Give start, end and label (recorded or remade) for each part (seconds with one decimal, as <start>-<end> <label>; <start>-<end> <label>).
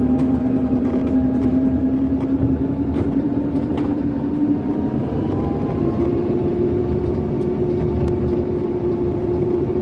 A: 0.0-6.5 remade; 6.5-8.6 recorded; 8.6-9.8 remade